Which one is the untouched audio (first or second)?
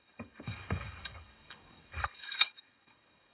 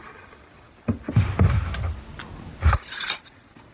second